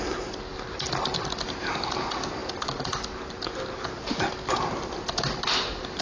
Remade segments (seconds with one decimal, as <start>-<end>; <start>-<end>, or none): none